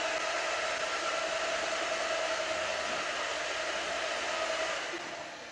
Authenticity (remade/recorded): recorded